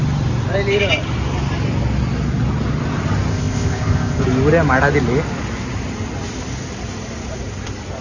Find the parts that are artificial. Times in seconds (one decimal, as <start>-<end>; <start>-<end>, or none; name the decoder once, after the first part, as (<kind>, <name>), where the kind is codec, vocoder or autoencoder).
3.3-4.2 (codec, ZipCodec)